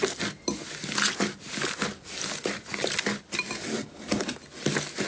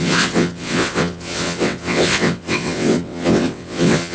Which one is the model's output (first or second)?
second